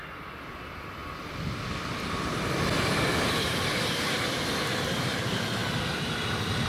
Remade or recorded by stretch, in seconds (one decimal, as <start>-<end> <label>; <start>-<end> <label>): 0.0-1.0 remade; 1.0-3.3 recorded; 3.3-5.6 remade; 5.6-6.3 recorded; 6.3-6.7 remade